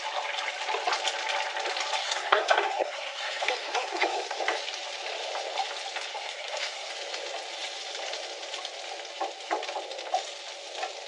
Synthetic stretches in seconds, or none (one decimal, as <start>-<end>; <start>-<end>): 2.0-4.4; 6.1-6.9